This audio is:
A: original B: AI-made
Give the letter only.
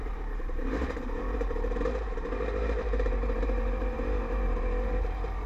B